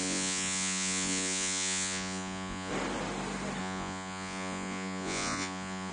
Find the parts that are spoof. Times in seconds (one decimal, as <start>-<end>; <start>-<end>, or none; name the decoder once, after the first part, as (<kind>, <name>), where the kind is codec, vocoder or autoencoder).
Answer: 0.0-2.7 (vocoder, Vocos); 3.6-5.9